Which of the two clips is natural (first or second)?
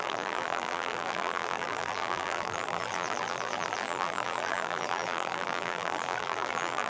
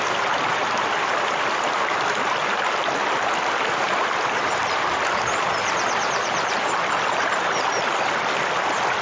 second